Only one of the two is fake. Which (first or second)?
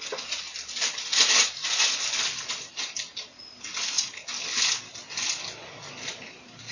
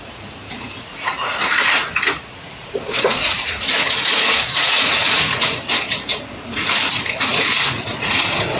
second